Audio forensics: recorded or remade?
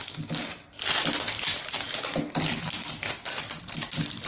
recorded